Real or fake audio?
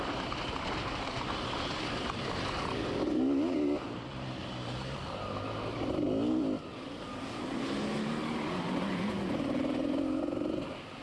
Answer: real